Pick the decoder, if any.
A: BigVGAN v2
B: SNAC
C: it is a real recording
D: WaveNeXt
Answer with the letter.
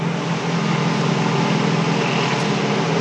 C